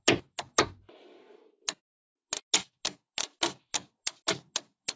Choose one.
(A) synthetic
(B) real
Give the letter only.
B